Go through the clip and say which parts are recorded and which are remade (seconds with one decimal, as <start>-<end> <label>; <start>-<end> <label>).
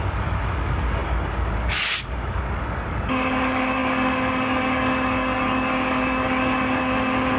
0.0-7.4 remade